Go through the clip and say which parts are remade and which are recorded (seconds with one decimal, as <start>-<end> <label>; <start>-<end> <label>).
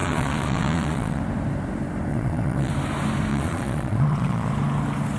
0.0-1.2 remade; 1.2-2.1 recorded; 2.1-2.7 remade; 2.7-3.3 recorded; 3.3-4.5 remade; 4.5-5.2 recorded